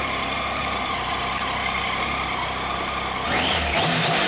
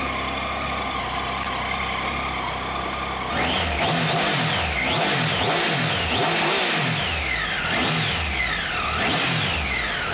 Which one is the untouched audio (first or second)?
second